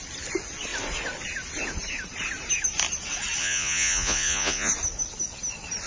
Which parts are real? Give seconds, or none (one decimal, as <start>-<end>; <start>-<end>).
0.0-3.4; 4.7-5.9